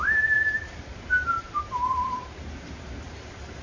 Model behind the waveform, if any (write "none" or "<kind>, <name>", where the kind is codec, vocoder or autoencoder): vocoder, BigVGAN v2